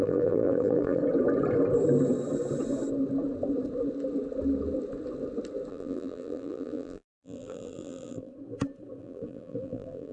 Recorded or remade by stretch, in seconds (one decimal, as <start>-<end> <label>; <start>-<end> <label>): 0.0-1.0 remade; 1.0-5.7 recorded; 5.7-8.3 remade; 8.3-9.0 recorded; 9.0-10.1 remade

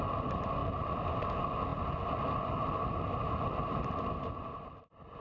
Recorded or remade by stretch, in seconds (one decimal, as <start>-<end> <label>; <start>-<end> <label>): 0.0-0.6 recorded; 0.6-1.1 remade; 1.1-5.2 recorded

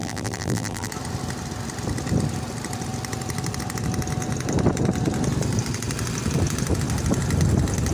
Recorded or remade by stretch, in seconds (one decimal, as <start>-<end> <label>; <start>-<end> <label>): 0.0-0.9 remade; 0.9-7.9 recorded

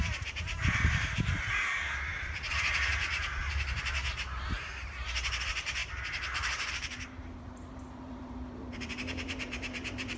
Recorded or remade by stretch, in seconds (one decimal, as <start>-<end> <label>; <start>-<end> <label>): 0.0-10.2 remade